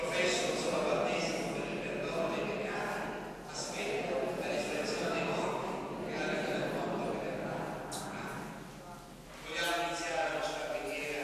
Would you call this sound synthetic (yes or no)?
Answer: no